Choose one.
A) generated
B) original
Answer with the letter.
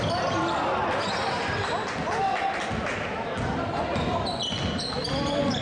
B